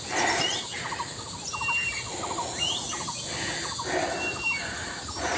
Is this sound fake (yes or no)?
no